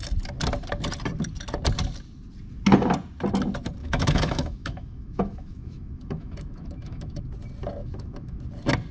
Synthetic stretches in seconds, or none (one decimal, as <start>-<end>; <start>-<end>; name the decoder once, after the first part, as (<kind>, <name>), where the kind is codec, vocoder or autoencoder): 3.8-7.2 (autoencoder, DAC-VAE); 7.8-8.4

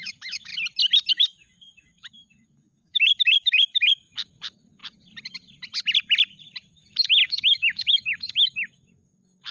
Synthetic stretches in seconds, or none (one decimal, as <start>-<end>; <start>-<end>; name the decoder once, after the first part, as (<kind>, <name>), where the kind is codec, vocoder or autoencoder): 0.0-0.5 (autoencoder, DAC-VAE); 1.1-4.8; 6.7-9.5

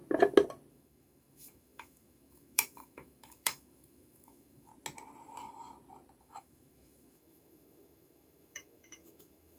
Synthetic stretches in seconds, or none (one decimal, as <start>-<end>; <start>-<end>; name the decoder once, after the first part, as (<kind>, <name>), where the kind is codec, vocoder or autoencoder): 0.7-4.7 (autoencoder, DAC-VAE); 6.2-9.6

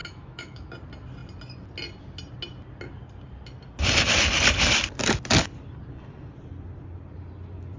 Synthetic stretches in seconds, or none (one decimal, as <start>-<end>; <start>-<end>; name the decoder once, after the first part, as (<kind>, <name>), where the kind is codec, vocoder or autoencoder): 0.0-0.7 (autoencoder, DAC-VAE)

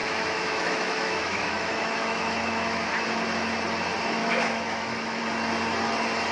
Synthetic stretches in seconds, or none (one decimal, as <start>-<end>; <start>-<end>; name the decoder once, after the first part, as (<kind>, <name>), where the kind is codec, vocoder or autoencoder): 0.0-2.9 (autoencoder, DAC-VAE); 4.2-5.2

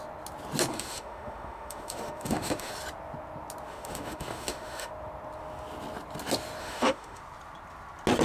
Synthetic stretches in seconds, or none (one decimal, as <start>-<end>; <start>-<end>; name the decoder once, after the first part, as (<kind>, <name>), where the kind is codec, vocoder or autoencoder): 0.7-2.7 (autoencoder, DAC-VAE); 3.7-4.9; 6.6-7.2

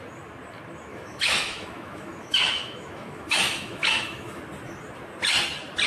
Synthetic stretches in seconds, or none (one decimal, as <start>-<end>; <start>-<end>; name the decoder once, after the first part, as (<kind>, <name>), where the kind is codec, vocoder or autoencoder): 0.9-4.4 (autoencoder, DAC-VAE)